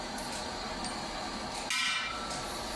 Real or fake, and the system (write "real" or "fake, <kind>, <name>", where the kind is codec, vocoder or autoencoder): real